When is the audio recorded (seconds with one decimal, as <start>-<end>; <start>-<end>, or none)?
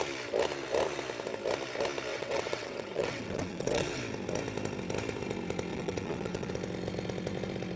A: 0.0-2.1; 4.0-5.7; 6.5-7.8